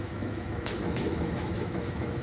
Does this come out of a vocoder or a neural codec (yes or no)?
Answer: yes